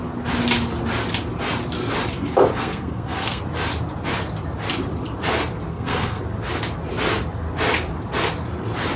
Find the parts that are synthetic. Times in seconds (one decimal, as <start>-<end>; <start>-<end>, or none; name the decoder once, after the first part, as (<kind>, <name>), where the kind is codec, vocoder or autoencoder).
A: 2.5-3.4 (codec, SNAC); 5.7-6.2